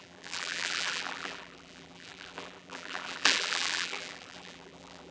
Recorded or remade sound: remade